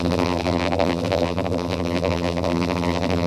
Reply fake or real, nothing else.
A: fake